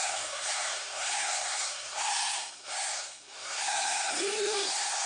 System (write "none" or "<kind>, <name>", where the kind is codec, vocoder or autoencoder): codec, SNAC